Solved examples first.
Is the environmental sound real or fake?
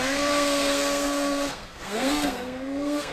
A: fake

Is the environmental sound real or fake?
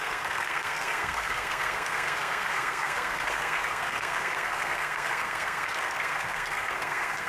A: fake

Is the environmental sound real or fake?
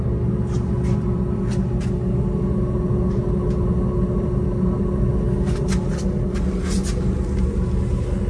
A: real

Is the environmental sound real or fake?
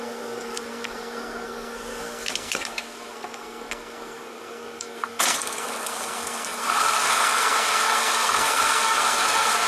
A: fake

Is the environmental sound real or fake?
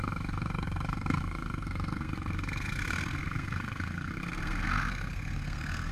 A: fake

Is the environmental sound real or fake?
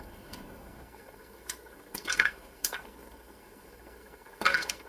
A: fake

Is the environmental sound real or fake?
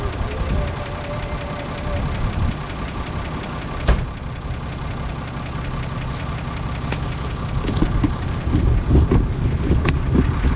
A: real